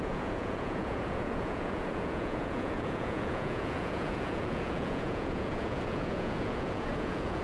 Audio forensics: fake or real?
fake